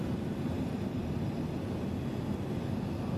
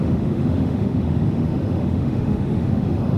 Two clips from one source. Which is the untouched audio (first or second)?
first